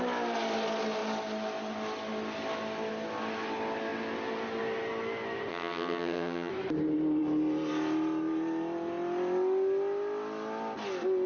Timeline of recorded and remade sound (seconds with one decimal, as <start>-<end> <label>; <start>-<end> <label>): 0.0-5.5 recorded; 5.5-6.5 remade; 6.5-11.3 recorded